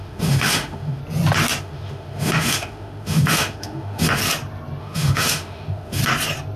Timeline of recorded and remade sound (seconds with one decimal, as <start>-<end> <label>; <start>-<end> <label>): 0.0-1.0 remade; 1.0-1.6 recorded; 1.6-4.2 remade; 4.2-4.8 recorded; 4.8-6.0 remade; 6.0-6.6 recorded